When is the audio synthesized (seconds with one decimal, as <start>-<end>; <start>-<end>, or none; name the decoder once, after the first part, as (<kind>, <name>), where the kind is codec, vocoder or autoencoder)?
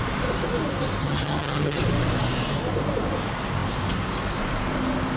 1.0-1.8 (vocoder, HiFi-GAN)